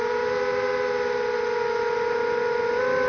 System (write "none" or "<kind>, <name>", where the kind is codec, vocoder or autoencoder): none